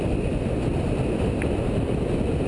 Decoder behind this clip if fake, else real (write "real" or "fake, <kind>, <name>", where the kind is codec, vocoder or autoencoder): real